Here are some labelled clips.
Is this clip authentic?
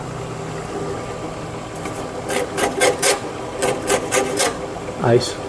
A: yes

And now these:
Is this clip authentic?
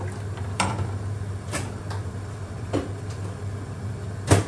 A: no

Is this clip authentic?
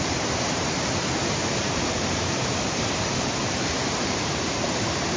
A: no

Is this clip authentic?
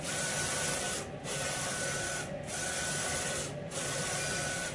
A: yes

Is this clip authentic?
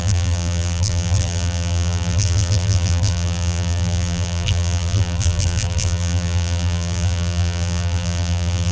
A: no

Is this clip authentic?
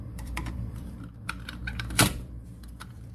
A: no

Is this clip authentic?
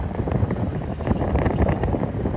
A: no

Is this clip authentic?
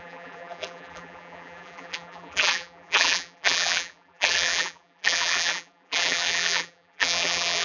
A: no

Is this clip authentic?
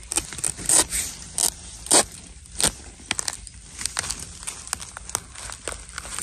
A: yes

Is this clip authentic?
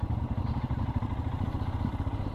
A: no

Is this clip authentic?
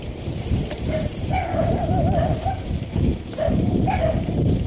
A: no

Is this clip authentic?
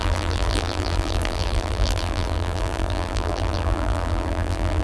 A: no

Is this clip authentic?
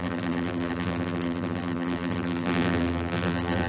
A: no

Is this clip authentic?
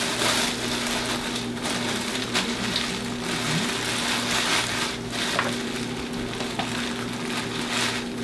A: yes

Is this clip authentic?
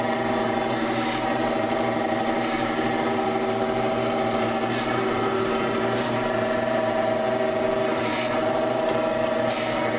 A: no